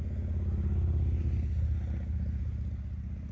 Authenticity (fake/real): real